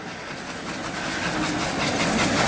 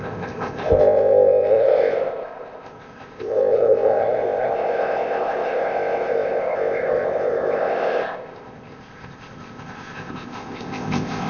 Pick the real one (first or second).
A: first